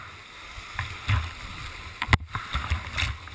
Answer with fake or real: real